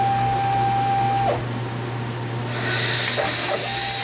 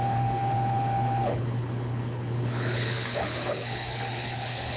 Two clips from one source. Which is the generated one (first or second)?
second